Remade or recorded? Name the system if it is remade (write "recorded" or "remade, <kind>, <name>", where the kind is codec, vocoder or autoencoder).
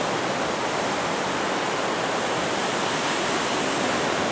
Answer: recorded